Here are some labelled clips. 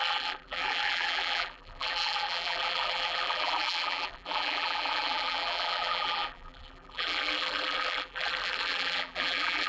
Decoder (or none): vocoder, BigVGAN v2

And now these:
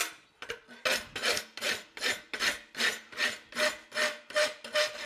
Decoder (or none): none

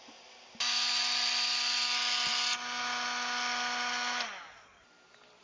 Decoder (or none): none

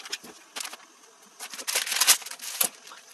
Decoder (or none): none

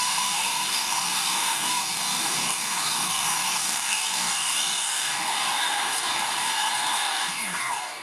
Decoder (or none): codec, DAC